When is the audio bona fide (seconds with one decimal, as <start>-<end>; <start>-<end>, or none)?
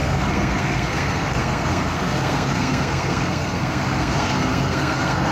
none